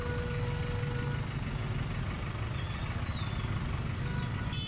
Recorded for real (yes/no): yes